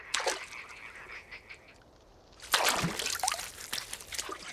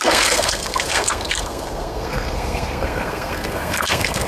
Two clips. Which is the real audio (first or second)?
first